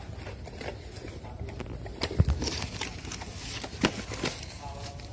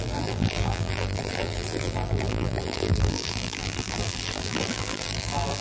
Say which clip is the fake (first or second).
second